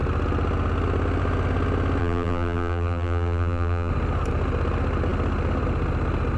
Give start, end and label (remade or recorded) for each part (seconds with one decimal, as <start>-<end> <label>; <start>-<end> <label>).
0.0-2.0 recorded; 2.0-3.9 remade; 3.9-6.4 recorded